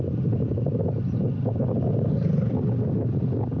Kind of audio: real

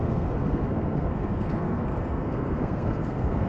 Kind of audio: fake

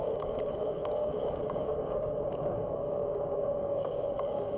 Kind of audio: fake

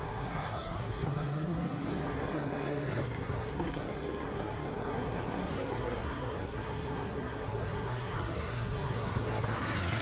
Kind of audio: fake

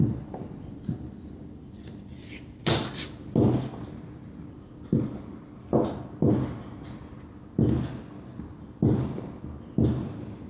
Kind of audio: real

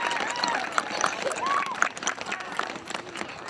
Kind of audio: real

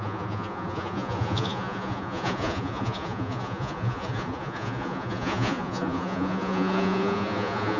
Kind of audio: fake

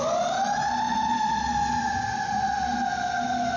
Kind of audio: real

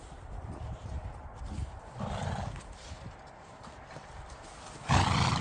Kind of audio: fake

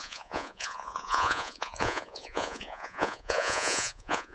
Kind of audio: fake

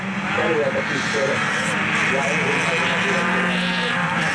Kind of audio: real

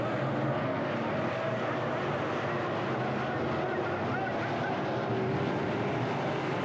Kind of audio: real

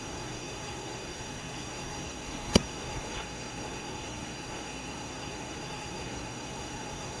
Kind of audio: fake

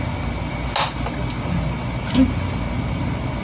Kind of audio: real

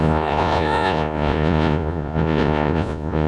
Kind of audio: fake